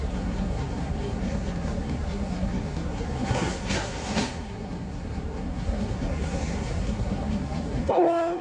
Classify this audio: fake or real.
fake